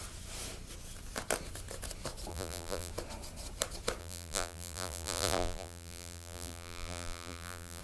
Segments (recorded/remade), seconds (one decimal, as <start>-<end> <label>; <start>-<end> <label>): 0.0-2.3 recorded; 2.3-2.9 remade; 2.9-4.0 recorded; 4.0-7.8 remade